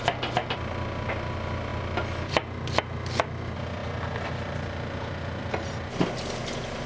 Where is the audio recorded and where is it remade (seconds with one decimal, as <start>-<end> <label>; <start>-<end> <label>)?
0.0-6.9 recorded